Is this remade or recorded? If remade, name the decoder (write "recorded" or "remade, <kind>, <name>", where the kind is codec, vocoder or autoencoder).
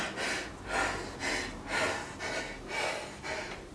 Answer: recorded